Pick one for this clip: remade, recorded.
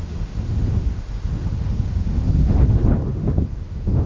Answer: remade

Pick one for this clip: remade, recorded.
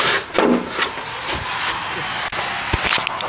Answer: recorded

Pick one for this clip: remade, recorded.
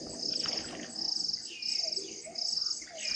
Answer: recorded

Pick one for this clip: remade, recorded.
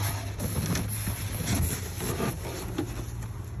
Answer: recorded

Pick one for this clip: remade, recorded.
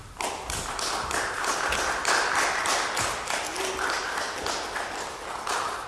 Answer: recorded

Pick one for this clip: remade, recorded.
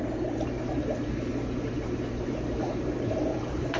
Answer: remade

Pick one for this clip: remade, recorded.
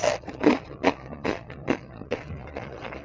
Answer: remade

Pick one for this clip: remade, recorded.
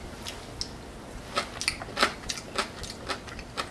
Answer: recorded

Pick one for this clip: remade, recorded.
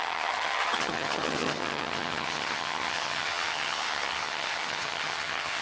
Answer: remade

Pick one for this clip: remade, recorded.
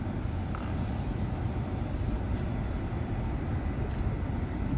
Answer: recorded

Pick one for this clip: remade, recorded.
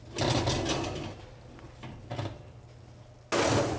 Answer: recorded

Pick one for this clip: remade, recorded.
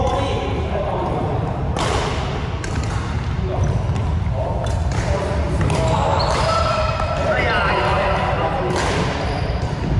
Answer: remade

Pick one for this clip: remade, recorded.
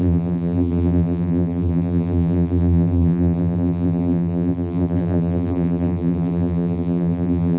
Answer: remade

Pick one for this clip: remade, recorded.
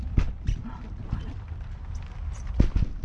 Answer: recorded